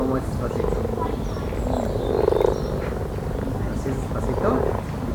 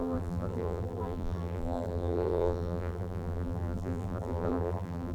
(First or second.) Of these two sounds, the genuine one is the first